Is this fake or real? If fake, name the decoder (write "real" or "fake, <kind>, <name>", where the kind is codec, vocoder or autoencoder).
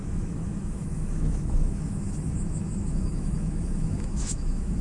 fake, autoencoder, DAC-VAE